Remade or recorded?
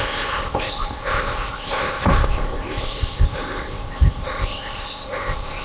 remade